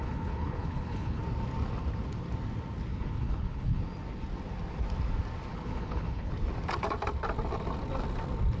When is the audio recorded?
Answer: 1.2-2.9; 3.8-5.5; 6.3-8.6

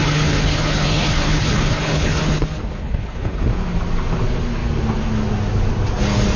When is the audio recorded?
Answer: 2.2-2.8; 3.4-6.4

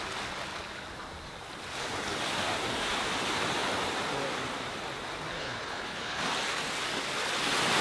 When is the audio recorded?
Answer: 0.0-5.3; 6.2-7.8

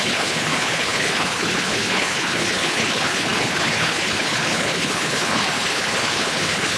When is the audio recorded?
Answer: none

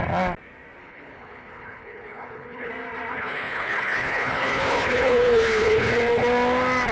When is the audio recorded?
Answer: 0.0-0.8; 2.7-3.1; 5.9-6.9

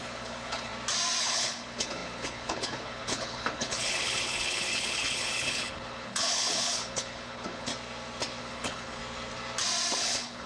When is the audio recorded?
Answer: 0.7-1.2; 7.7-8.4; 9.0-10.0

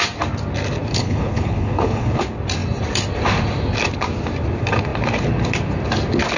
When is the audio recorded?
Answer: 0.0-0.9; 2.2-6.4

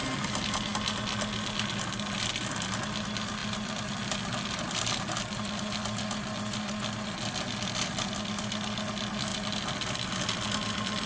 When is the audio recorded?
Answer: 0.0-11.1